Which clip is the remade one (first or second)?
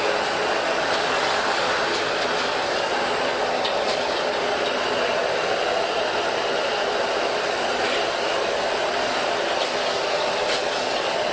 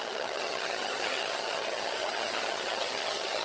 second